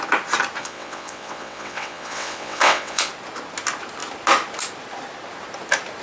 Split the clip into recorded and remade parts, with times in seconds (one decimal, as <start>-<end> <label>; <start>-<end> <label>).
0.0-0.6 recorded; 0.6-3.1 remade; 3.1-6.0 recorded